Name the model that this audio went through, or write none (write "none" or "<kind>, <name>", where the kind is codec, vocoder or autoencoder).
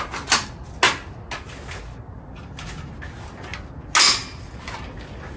none